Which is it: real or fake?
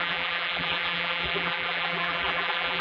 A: fake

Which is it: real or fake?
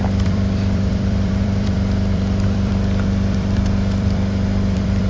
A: fake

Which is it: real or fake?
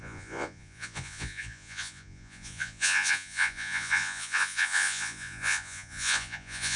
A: fake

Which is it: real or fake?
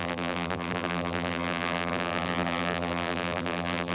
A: fake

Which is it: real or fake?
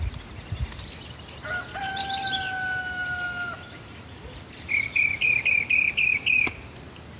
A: real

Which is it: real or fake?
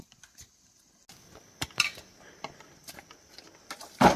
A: real